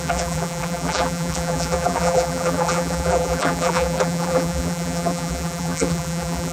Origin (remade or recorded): remade